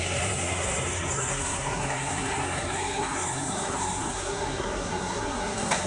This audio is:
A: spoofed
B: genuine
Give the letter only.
A